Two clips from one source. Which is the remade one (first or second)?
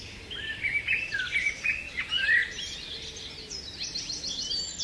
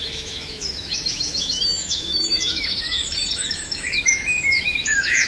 second